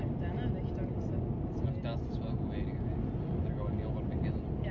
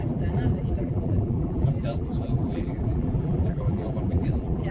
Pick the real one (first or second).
first